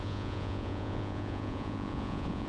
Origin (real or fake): fake